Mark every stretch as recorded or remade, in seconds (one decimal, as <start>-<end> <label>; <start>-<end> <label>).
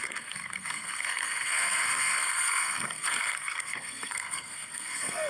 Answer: 0.0-5.3 remade